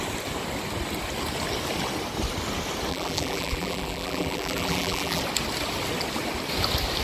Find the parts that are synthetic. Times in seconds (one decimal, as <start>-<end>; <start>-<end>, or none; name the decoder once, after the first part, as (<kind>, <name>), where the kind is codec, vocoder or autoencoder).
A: 2.9-5.2 (vocoder, BigVGAN v2)